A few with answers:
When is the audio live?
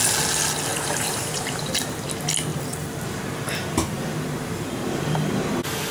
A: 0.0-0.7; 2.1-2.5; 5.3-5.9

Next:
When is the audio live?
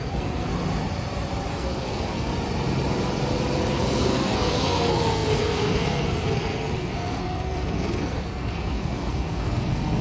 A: 0.5-1.5; 2.3-3.7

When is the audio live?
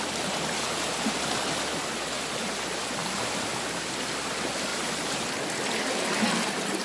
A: 0.0-6.8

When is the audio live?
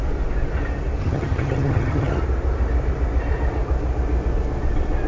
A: 0.0-1.0; 2.2-5.1